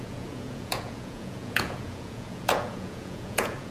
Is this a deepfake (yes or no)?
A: yes